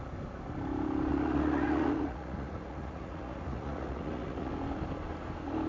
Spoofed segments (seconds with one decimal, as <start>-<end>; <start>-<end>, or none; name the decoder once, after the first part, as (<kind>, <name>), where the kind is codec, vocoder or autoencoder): 1.1-4.5 (vocoder, Vocos)